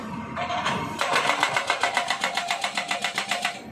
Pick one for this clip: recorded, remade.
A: remade